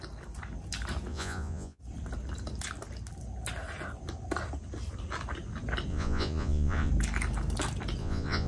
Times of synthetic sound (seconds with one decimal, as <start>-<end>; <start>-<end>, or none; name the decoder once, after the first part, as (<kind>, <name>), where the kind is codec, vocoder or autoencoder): 1.1-1.8 (vocoder, Vocos); 5.9-6.9; 8.0-8.5